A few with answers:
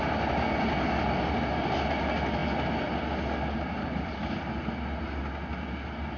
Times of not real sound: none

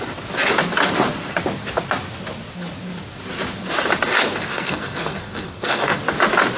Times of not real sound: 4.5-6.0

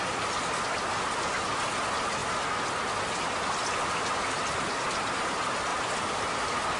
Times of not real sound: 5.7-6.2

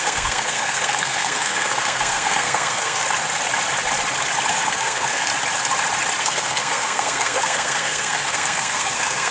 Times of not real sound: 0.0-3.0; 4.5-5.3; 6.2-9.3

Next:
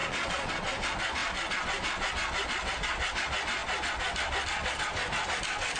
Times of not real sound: 0.0-0.5